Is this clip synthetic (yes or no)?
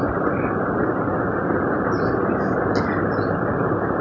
no